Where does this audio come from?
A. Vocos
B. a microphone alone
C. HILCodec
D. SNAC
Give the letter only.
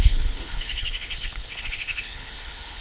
C